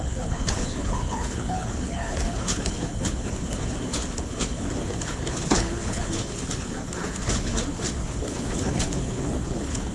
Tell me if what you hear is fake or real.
fake